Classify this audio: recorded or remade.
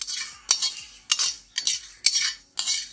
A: recorded